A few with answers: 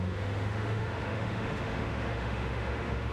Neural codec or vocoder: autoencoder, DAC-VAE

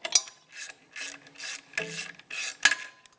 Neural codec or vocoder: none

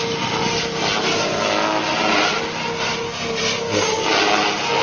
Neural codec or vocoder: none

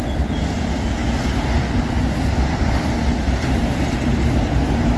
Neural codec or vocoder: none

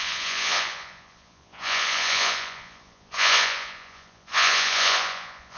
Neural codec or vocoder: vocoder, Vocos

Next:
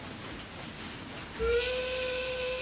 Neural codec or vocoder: none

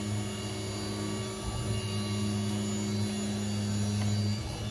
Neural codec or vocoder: none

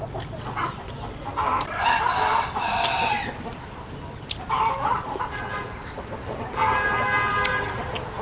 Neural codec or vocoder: none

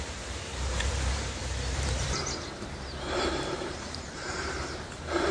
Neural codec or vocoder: vocoder, BigVGAN v2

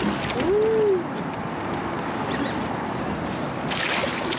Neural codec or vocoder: none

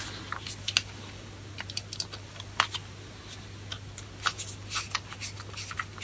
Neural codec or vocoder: none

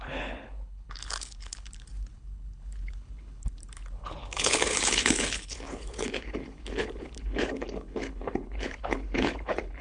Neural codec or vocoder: codec, HILCodec